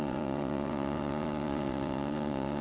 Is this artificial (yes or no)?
yes